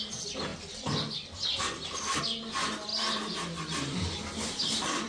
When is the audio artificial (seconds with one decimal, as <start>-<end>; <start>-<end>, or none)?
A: none